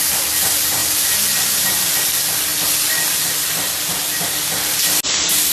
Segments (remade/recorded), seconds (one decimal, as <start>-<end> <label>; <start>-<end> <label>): 0.0-5.5 recorded